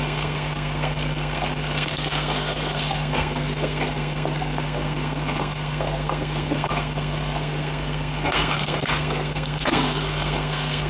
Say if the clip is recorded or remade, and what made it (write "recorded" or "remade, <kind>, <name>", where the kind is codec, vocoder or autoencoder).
remade, codec, SNAC